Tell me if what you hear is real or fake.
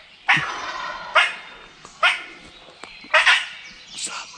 real